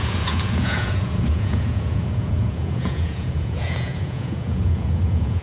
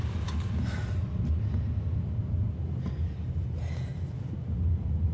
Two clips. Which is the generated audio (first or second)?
first